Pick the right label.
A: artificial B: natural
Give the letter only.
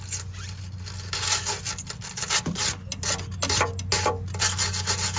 B